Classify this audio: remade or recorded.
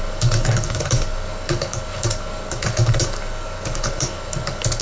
remade